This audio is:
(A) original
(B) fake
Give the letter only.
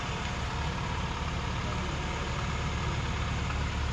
A